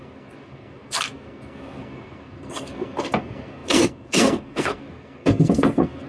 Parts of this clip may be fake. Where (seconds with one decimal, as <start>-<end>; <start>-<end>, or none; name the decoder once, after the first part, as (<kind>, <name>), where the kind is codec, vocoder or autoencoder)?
0.0-6.1 (codec, SNAC)